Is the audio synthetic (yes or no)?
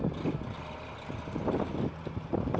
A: no